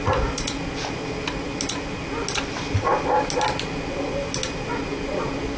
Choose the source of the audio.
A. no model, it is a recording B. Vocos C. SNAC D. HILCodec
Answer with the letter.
A